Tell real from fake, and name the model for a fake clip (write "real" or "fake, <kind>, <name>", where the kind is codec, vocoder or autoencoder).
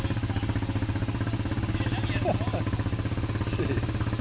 real